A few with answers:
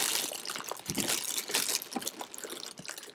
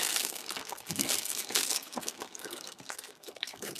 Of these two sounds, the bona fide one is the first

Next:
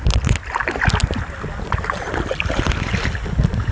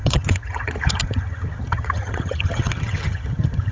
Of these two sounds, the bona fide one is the first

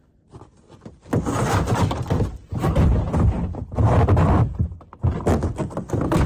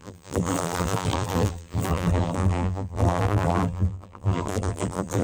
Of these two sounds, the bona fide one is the first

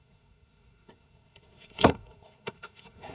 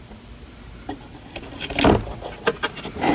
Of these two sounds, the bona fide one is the second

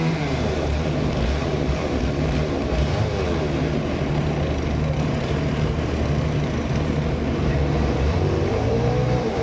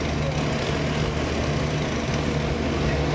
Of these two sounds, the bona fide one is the second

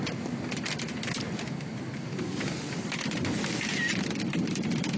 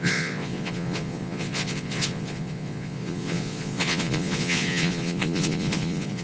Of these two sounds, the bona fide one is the first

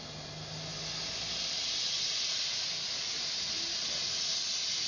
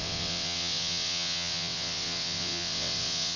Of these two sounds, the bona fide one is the first